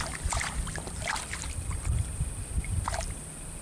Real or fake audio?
fake